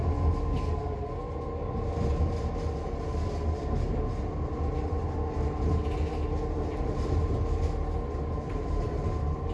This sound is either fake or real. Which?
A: real